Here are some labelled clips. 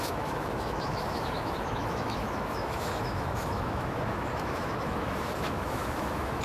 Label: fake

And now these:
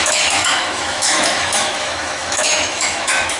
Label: fake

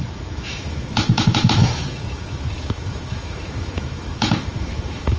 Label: fake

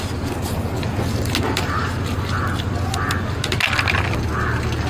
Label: real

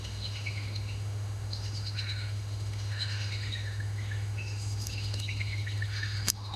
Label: fake